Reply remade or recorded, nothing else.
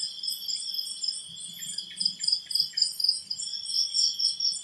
recorded